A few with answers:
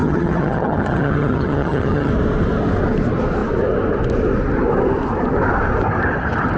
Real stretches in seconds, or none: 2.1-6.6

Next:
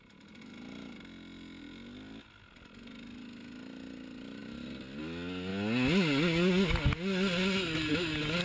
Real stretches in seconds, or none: 0.0-8.4

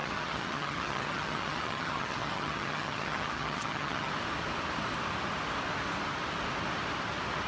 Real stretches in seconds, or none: 4.1-7.5

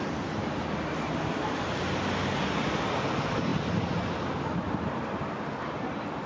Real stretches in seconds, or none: 0.0-6.3

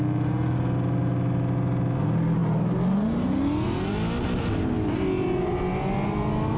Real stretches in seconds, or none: 0.0-6.6

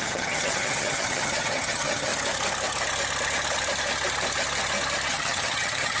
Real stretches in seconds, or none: 2.1-5.1